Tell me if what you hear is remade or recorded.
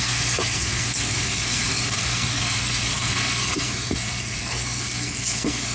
remade